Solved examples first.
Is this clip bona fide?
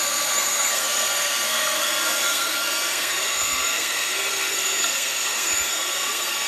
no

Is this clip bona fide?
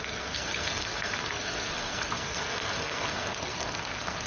no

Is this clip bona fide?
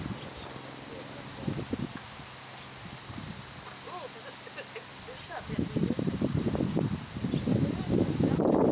yes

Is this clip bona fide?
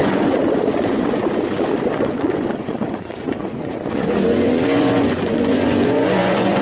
no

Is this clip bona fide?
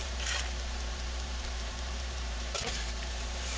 no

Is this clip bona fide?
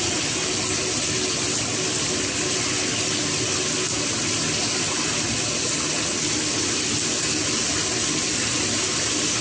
yes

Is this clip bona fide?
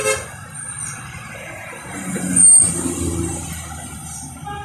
yes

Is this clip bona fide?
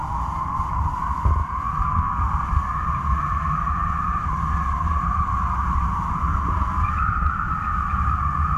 yes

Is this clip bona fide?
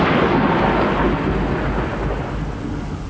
yes